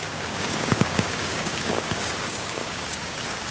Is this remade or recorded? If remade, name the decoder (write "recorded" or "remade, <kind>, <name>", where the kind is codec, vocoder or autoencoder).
remade, codec, DAC